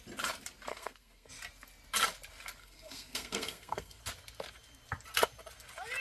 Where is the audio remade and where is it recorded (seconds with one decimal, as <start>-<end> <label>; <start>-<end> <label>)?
0.0-0.7 recorded; 0.7-1.3 remade; 1.3-2.6 recorded; 2.6-4.0 remade; 4.0-6.0 recorded